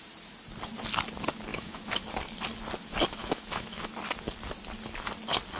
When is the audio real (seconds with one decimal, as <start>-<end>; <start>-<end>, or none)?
0.0-1.5; 2.0-3.2; 3.9-5.6

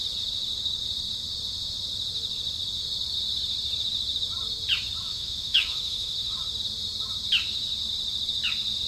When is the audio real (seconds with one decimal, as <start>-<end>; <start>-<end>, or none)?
0.0-5.1; 6.4-8.9

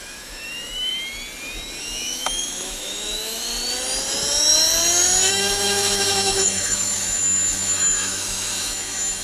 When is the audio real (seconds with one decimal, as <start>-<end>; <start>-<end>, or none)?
0.9-1.8; 3.5-5.3

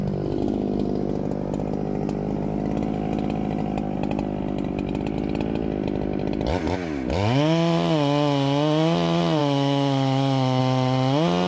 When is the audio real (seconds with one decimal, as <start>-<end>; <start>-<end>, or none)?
0.0-9.4; 10.6-11.5